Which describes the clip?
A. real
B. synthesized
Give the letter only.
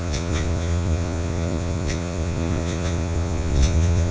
B